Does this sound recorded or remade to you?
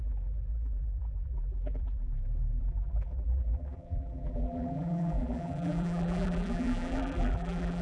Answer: remade